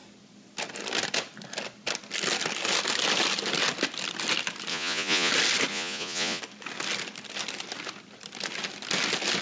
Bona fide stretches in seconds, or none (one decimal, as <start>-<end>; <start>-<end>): 0.0-4.7; 5.3-5.7; 6.4-9.4